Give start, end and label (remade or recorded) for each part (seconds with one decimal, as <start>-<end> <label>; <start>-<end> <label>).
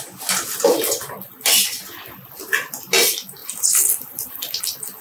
0.0-1.0 recorded; 1.0-1.8 remade; 1.8-3.4 recorded; 3.4-4.6 remade; 4.6-5.0 recorded